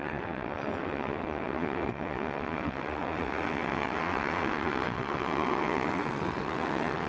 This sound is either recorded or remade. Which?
remade